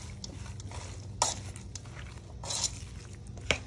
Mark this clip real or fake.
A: real